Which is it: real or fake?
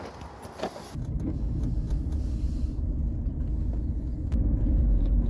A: real